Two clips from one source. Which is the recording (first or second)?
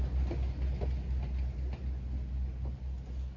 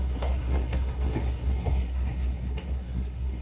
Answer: first